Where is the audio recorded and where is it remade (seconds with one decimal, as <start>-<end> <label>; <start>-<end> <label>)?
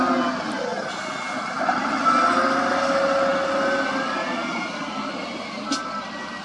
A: 0.0-6.4 recorded